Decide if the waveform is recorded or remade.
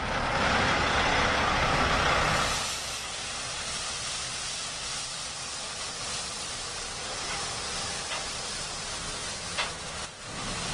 recorded